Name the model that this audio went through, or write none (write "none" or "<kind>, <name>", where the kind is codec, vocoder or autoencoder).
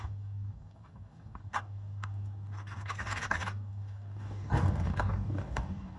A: codec, DAC